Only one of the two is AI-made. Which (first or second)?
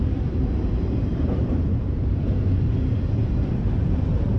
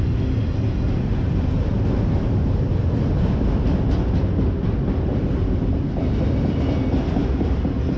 first